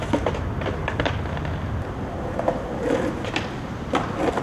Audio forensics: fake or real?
real